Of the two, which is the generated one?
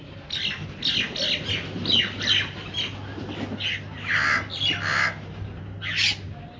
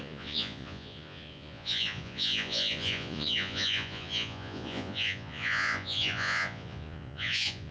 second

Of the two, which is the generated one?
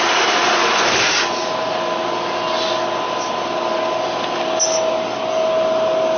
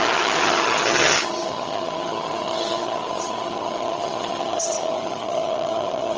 second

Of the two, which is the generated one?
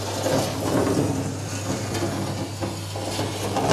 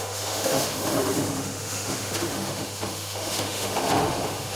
second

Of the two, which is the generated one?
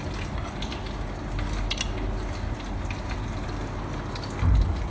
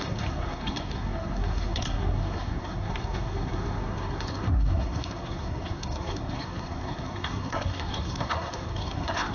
second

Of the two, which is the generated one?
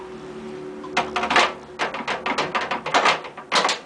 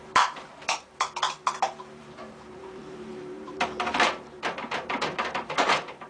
second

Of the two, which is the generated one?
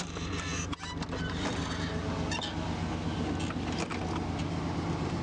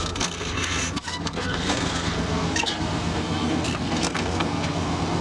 second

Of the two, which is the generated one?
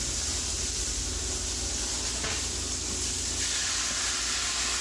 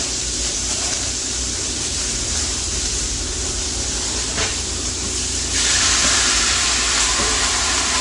second